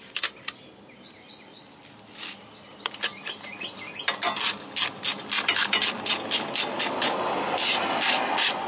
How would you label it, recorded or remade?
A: recorded